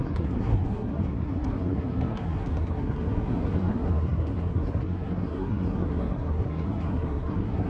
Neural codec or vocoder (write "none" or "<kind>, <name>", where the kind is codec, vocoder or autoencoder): codec, SNAC